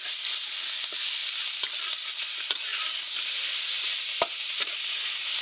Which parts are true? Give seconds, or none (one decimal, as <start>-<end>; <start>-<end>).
0.0-5.4